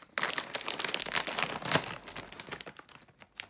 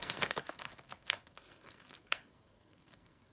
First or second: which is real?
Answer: first